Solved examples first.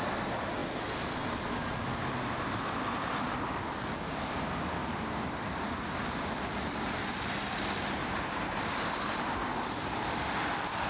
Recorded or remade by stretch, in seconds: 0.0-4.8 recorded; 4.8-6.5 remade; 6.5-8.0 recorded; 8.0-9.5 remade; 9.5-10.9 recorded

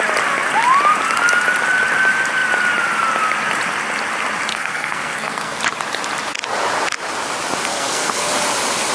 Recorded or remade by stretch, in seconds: 0.0-4.5 recorded; 4.5-5.6 remade; 5.6-7.7 recorded; 7.7-8.3 remade; 8.3-8.9 recorded

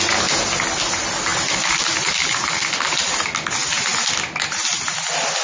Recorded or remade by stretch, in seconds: 0.0-5.4 recorded

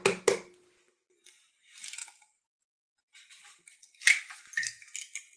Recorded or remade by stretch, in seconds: 0.0-5.4 recorded

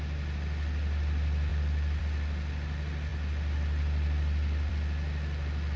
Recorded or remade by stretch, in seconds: 0.0-5.8 recorded